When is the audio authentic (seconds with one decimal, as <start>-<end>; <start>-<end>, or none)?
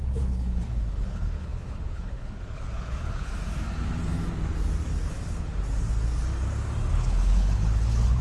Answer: 3.3-5.1; 5.5-6.9